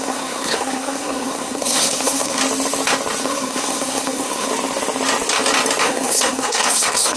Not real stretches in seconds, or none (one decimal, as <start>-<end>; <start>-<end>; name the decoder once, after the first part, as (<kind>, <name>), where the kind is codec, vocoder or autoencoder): 0.0-2.4 (codec, SNAC); 3.2-4.5; 5.8-7.2